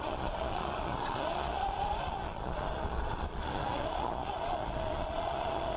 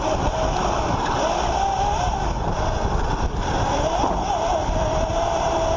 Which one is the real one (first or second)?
second